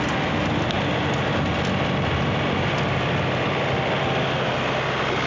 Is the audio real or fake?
real